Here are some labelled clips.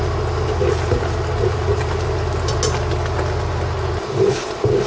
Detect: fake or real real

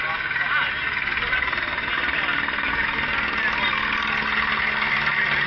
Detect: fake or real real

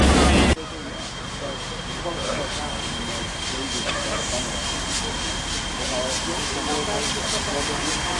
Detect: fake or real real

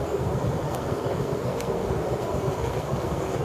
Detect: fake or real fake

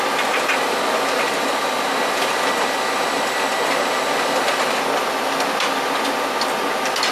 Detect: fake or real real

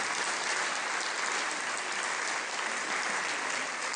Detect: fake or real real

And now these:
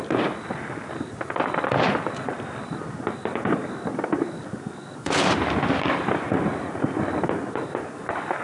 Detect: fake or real fake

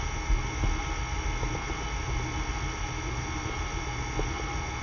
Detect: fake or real real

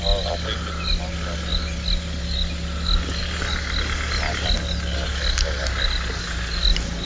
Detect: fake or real real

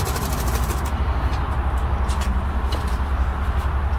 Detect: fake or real real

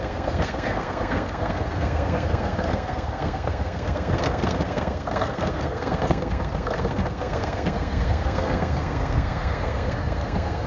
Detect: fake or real fake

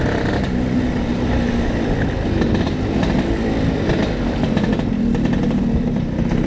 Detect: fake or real fake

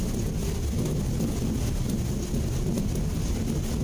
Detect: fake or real real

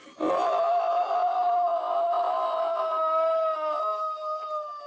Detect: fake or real real